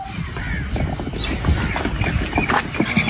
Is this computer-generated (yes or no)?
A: no